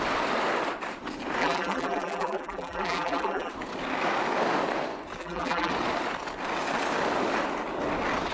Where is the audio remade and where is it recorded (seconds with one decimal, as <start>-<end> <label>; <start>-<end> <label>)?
0.0-1.4 recorded; 1.4-3.5 remade; 3.5-5.2 recorded; 5.2-5.7 remade; 5.7-8.3 recorded